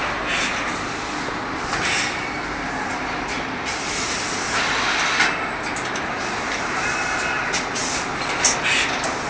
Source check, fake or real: real